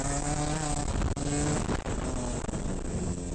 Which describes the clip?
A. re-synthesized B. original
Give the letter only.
B